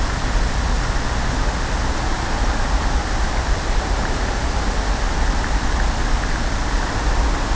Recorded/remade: recorded